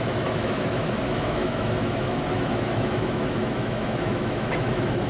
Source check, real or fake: fake